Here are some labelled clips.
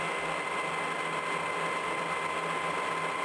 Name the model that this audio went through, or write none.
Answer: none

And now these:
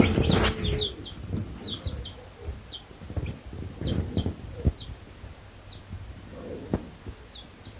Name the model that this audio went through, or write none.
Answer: none